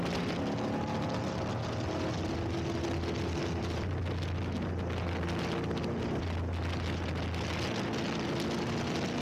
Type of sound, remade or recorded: recorded